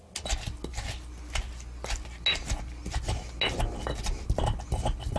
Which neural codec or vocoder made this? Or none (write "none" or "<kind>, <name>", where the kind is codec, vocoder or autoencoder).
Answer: none